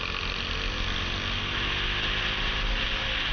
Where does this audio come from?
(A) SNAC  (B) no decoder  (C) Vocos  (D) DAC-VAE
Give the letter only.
B